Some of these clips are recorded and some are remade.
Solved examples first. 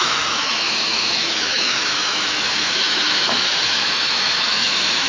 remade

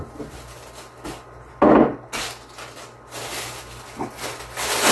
recorded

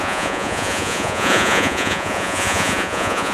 remade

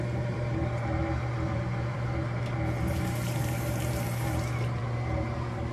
remade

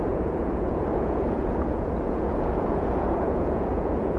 remade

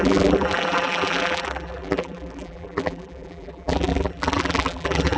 remade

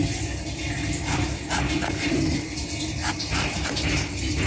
recorded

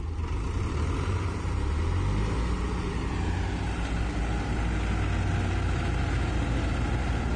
recorded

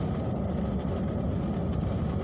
recorded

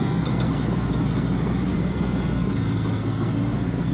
remade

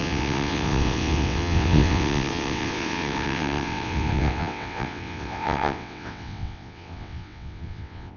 remade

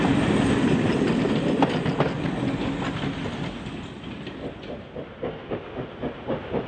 recorded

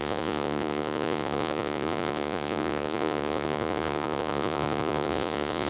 remade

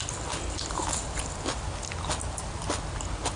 recorded